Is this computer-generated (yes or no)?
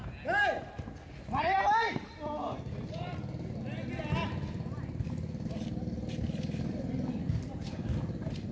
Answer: no